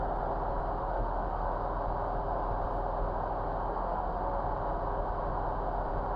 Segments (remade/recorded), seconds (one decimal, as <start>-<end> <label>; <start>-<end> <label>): 0.0-0.8 recorded; 0.8-1.5 remade; 1.5-3.7 recorded; 3.7-4.4 remade; 4.4-6.2 recorded